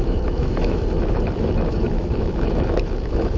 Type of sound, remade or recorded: remade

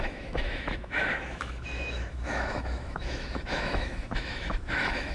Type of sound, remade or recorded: remade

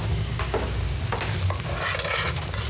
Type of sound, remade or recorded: recorded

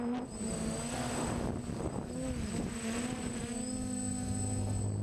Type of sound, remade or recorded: recorded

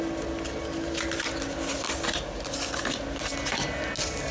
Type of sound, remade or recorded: recorded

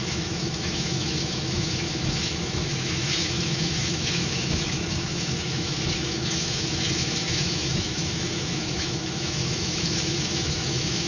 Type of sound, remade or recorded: remade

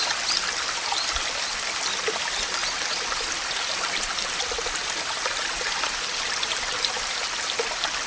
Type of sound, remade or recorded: recorded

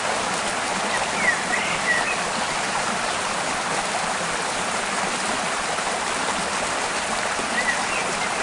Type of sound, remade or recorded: recorded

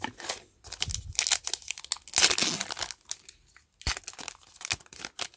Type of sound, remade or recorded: recorded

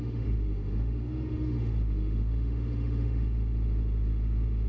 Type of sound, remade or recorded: remade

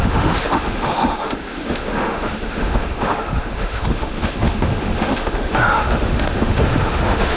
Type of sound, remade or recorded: remade